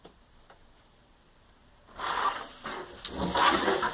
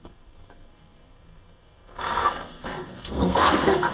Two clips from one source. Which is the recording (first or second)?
first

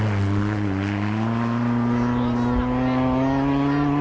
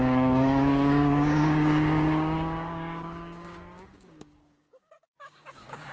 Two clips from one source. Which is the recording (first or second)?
first